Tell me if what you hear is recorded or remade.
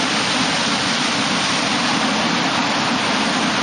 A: recorded